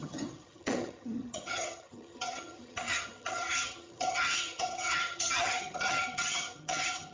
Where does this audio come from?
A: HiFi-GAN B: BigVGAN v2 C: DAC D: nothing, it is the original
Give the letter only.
A